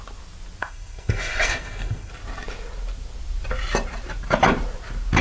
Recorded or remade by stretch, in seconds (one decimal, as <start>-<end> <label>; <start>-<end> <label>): 0.0-0.6 recorded; 0.6-2.1 remade; 2.1-5.2 recorded